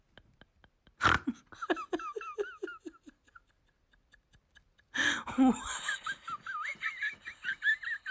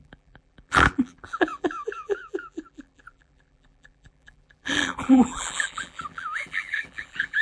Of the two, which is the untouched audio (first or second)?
first